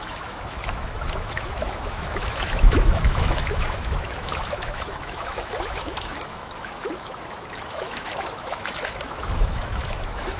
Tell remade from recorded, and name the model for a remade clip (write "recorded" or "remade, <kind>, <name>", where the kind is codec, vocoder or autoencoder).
remade, autoencoder, DAC-VAE